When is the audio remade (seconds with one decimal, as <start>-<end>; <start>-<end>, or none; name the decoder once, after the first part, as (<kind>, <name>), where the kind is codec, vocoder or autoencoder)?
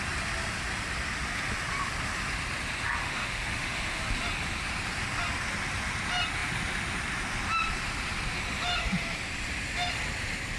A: 3.0-4.0 (autoencoder, DAC-VAE)